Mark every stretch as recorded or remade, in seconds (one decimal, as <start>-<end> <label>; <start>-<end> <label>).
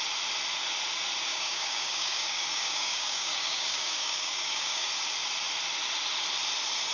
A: 0.0-1.3 recorded; 1.3-4.9 remade; 4.9-6.9 recorded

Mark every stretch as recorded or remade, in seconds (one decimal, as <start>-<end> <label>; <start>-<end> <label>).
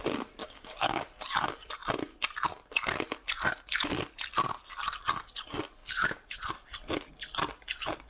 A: 0.0-0.4 recorded; 0.4-1.0 remade; 1.0-5.8 recorded; 5.8-6.4 remade; 6.4-8.1 recorded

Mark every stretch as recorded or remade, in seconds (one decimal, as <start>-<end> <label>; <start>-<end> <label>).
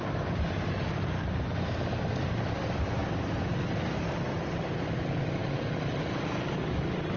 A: 0.0-7.2 recorded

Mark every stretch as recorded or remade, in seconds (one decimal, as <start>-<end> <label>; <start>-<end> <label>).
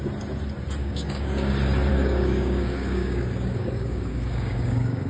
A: 0.0-0.8 recorded; 0.8-1.5 remade; 1.5-1.9 recorded; 1.9-5.1 remade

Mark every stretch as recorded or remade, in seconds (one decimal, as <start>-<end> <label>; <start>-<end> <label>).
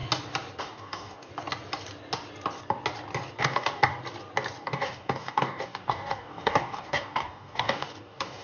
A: 0.0-0.6 recorded; 0.6-1.3 remade; 1.3-3.4 recorded; 3.4-3.9 remade; 3.9-4.6 recorded; 4.6-8.4 remade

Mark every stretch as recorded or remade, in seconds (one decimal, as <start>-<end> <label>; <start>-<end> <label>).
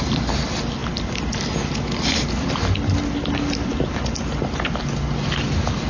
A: 0.0-5.9 recorded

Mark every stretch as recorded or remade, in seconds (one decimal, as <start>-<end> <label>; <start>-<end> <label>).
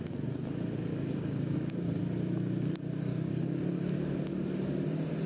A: 0.0-0.9 recorded; 0.9-2.0 remade; 2.0-3.1 recorded; 3.1-3.6 remade; 3.6-5.3 recorded